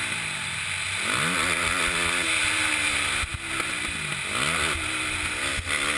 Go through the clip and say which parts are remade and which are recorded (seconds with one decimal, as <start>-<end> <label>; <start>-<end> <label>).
0.0-6.0 recorded